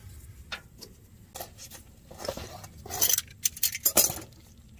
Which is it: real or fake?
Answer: real